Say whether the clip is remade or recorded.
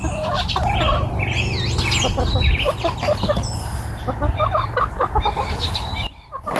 recorded